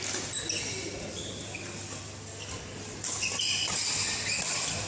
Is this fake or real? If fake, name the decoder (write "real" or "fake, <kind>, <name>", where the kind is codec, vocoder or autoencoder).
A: real